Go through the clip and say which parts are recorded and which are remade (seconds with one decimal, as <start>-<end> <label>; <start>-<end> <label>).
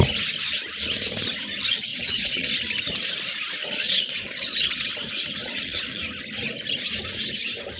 0.0-1.9 recorded; 1.9-2.5 remade; 2.5-3.6 recorded; 3.6-4.9 remade; 4.9-5.4 recorded; 5.4-6.0 remade; 6.0-7.8 recorded